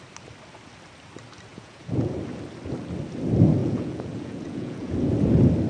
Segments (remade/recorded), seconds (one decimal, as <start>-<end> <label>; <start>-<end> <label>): 0.0-1.5 recorded; 1.5-2.1 remade; 2.1-3.6 recorded; 3.6-5.1 remade; 5.1-5.7 recorded